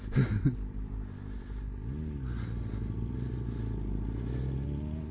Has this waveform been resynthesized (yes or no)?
no